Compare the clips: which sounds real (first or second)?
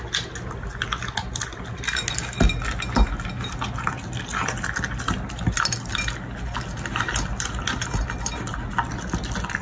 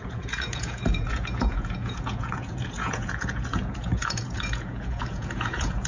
first